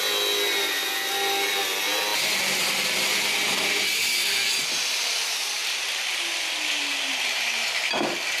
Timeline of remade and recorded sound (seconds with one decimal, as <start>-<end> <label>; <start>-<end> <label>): 0.0-8.4 recorded